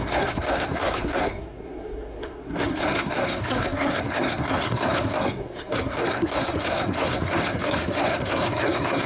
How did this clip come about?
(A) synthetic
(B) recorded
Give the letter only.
A